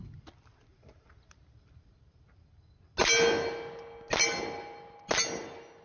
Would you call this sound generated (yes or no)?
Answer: no